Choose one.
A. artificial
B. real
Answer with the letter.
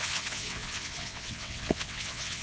A